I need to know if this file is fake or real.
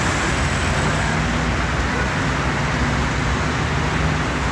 real